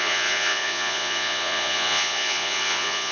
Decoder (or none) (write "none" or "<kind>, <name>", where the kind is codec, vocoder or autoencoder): vocoder, Vocos